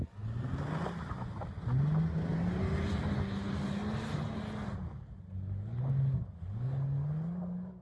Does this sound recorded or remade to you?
recorded